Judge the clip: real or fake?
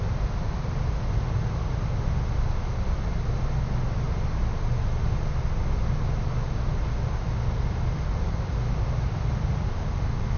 real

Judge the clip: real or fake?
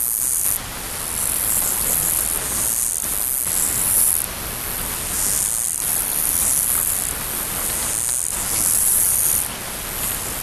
real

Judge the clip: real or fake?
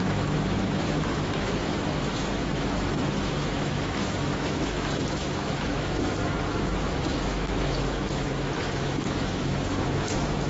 fake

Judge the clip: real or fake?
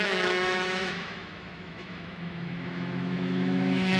fake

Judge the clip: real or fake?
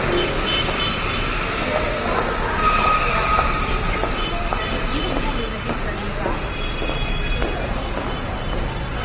real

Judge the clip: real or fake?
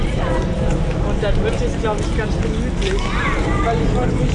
real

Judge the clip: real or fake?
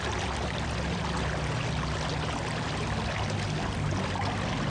real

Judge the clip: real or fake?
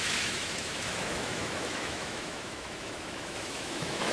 fake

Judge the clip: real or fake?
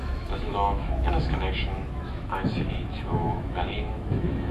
fake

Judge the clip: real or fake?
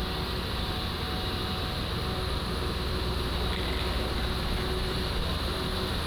real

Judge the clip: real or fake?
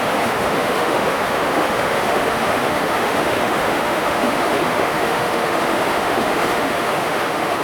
fake